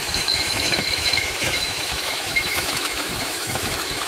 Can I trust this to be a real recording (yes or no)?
no